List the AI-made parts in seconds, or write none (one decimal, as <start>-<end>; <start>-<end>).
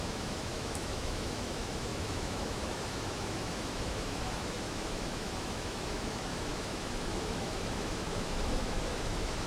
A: 0.0-9.5